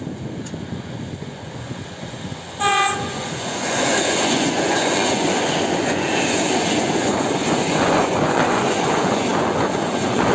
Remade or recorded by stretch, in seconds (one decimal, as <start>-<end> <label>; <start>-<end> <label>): 0.0-10.3 remade